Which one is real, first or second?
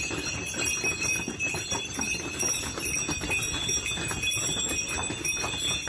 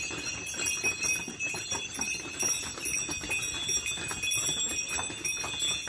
second